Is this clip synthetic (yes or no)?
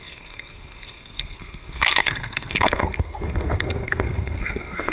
yes